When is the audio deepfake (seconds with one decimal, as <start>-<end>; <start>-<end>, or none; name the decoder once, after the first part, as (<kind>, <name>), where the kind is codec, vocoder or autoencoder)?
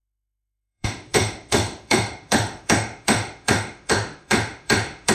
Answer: 0.0-5.1 (autoencoder, DAC-VAE)